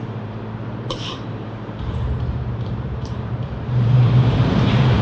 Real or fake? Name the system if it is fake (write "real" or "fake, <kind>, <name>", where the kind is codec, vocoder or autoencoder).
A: fake, vocoder, BigVGAN v2